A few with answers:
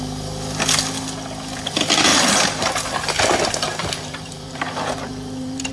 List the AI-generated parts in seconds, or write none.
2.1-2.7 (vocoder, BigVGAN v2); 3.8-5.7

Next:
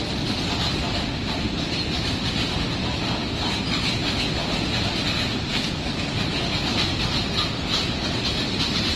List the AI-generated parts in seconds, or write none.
5.5-6.1 (codec, SNAC)

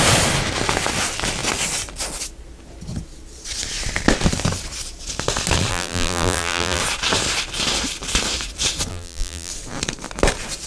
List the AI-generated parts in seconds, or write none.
5.7-6.8 (vocoder, BigVGAN v2); 8.9-9.5

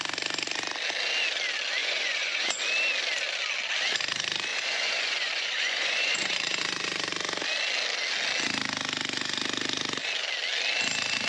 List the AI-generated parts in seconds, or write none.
1.8-2.6 (vocoder, Vocos); 4.5-7.1

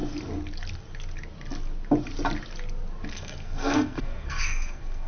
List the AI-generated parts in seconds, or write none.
3.1-5.1 (codec, SNAC)

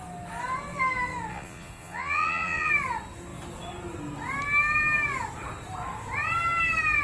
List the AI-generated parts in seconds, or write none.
1.3-2.7 (vocoder, Vocos)